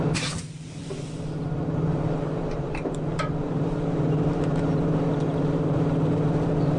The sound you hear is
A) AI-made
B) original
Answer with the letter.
A